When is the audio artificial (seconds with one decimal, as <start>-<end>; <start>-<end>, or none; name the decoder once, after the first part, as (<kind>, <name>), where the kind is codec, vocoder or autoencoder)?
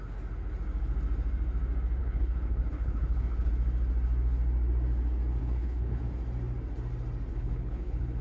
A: 2.0-3.5 (codec, HILCodec); 5.4-6.0; 7.3-8.2